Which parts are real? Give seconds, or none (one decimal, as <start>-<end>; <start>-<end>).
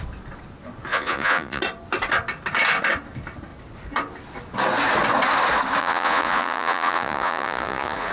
0.0-0.9; 1.6-5.8